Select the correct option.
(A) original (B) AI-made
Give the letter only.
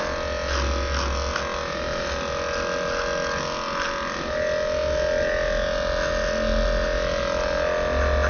A